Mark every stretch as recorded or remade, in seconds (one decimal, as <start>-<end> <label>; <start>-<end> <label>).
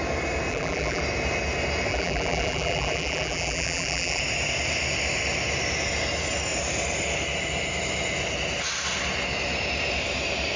0.0-0.5 recorded; 0.5-1.0 remade; 1.0-1.9 recorded; 1.9-4.2 remade; 4.2-10.6 recorded